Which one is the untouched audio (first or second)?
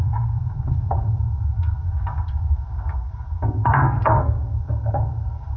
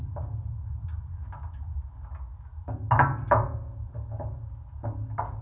second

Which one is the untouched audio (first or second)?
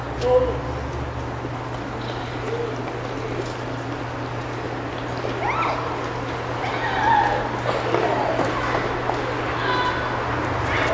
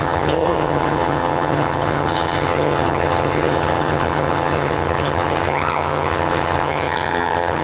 first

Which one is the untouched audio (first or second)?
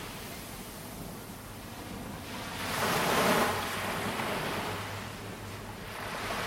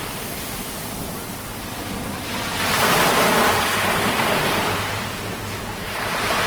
first